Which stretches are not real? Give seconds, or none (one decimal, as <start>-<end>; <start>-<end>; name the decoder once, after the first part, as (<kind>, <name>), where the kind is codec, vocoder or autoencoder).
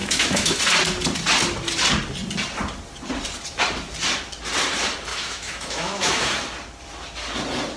0.0-0.6 (autoencoder, DAC-VAE); 5.1-6.4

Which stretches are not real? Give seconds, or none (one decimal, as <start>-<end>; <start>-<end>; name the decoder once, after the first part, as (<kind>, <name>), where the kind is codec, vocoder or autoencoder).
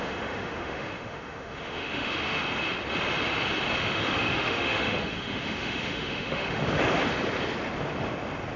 0.0-2.4 (autoencoder, DAC-VAE); 3.8-6.6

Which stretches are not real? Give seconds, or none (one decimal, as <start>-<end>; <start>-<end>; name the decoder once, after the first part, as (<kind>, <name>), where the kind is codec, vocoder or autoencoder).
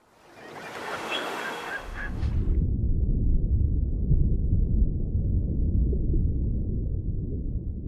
0.8-2.3 (autoencoder, DAC-VAE)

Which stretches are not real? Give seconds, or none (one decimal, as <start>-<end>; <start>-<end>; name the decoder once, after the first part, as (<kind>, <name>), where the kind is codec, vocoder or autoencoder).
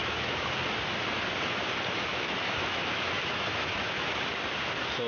0.0-0.5 (autoencoder, DAC-VAE); 2.1-4.1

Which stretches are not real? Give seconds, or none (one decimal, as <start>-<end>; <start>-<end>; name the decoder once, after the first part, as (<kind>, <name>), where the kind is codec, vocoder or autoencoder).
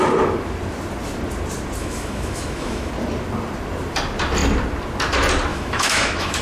1.8-2.9 (autoencoder, DAC-VAE); 5.5-6.4